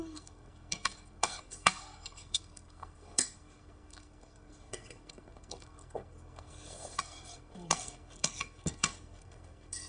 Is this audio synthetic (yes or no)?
yes